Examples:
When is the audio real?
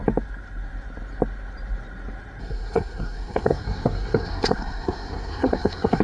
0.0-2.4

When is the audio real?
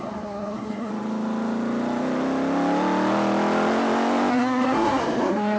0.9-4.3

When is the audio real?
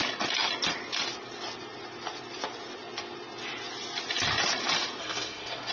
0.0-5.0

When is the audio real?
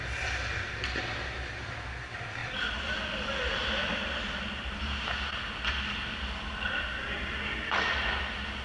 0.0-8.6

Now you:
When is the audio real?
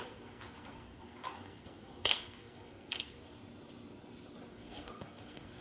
3.4-4.5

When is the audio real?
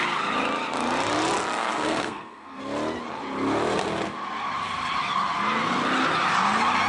0.0-1.6; 2.6-6.9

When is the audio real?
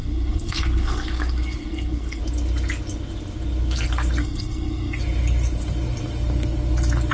2.2-4.2; 5.0-7.1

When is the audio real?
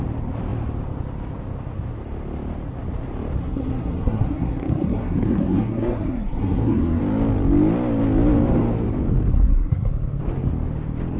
0.0-3.4; 7.0-9.3; 9.9-11.2